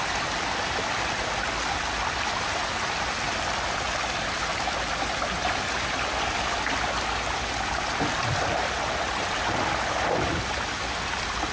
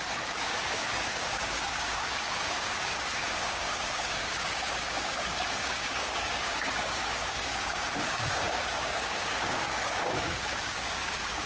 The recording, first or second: first